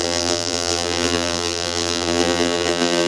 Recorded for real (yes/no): no